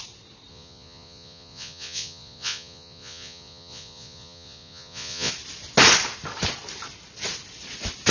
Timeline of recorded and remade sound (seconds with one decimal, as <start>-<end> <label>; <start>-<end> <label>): 0.0-0.5 recorded; 0.5-5.3 remade; 5.3-8.1 recorded